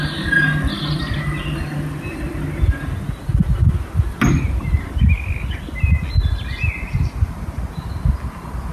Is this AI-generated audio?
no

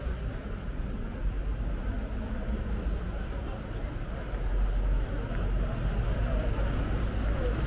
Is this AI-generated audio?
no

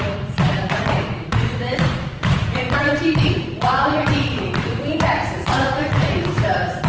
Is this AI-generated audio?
yes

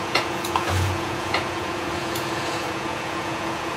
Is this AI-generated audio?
yes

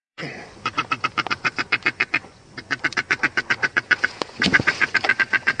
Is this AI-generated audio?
yes